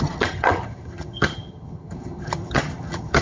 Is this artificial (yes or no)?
yes